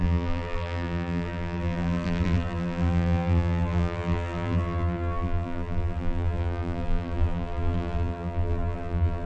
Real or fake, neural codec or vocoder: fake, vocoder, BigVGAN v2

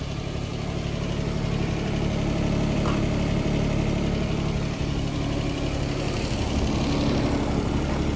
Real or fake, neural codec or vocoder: fake, vocoder, BigVGAN v2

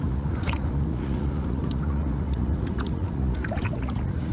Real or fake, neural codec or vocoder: fake, vocoder, Vocos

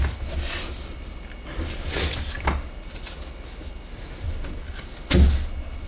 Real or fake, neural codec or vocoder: real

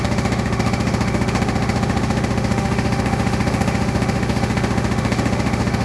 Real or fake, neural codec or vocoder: fake, autoencoder, DAC-VAE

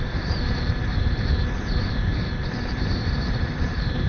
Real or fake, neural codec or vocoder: fake, vocoder, BigVGAN v2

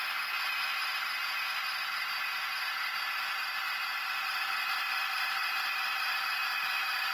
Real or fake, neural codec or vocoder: real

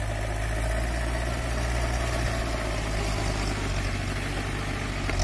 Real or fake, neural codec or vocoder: real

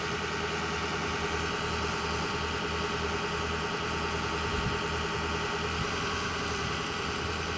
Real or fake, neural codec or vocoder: real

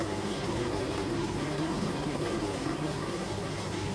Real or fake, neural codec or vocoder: fake, codec, SNAC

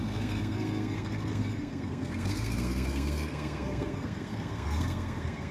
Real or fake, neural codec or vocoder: fake, codec, SNAC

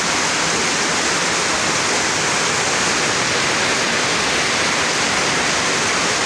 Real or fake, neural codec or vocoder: real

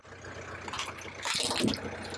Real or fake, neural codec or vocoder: real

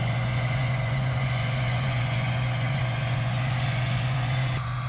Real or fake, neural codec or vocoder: fake, vocoder, Vocos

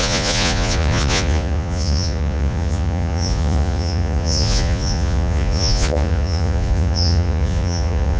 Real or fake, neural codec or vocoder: fake, vocoder, Vocos